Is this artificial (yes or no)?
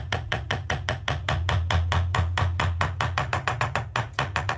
yes